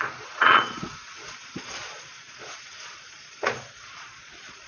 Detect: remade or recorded remade